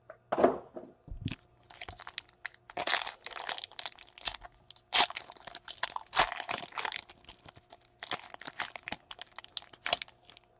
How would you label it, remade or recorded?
recorded